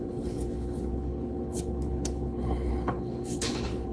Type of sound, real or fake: fake